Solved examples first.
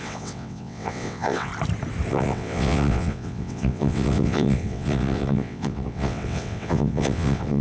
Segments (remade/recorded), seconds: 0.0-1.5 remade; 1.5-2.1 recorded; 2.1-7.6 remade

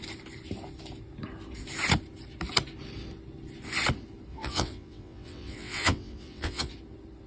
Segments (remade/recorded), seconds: 0.0-4.3 recorded; 4.3-6.7 remade; 6.7-7.3 recorded

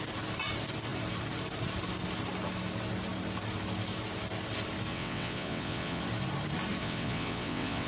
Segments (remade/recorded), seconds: 0.0-4.9 recorded; 4.9-6.0 remade; 6.0-6.8 recorded; 6.8-7.9 remade

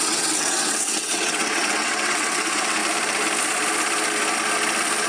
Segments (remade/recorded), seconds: 0.0-2.8 remade; 2.8-5.1 recorded

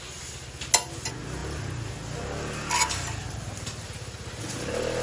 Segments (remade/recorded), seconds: 0.0-5.0 recorded

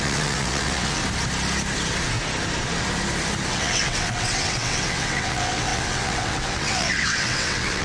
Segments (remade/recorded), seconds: 0.0-1.0 remade; 1.0-3.5 recorded; 3.5-7.8 remade

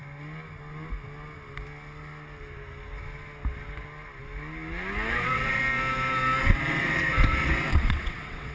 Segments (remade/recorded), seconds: 0.0-5.1 recorded; 5.1-5.6 remade; 5.6-6.4 recorded; 6.4-8.5 remade